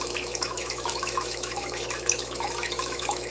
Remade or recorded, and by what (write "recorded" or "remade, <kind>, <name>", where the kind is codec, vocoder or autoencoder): remade, autoencoder, DAC-VAE